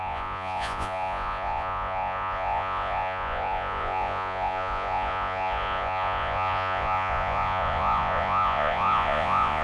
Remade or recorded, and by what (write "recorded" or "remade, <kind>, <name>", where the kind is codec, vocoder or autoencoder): remade, vocoder, Vocos